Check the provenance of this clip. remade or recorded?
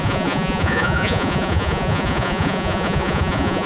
remade